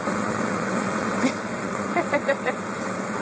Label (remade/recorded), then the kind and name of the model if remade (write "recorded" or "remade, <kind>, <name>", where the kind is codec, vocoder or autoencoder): remade, vocoder, WaveNeXt